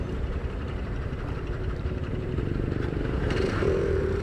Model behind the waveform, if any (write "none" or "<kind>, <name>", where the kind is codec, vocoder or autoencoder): vocoder, BigVGAN v2